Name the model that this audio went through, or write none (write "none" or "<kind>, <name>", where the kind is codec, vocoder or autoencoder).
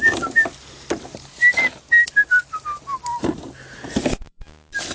none